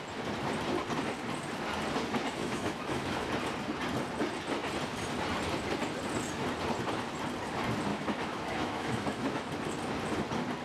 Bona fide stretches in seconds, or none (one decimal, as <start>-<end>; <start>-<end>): 0.0-2.4; 3.3-7.9; 9.5-10.6